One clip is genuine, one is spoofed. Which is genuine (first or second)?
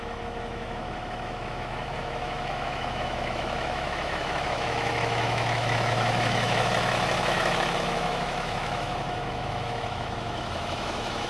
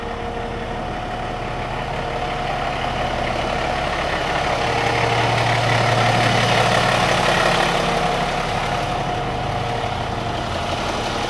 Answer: second